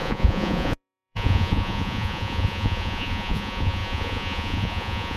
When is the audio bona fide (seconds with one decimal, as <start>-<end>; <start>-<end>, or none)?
none